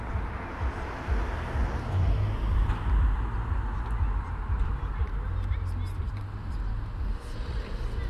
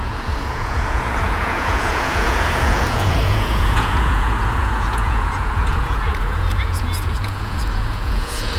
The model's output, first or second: second